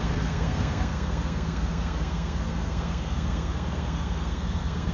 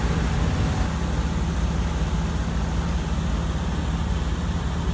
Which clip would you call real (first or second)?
second